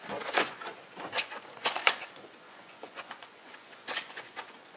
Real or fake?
fake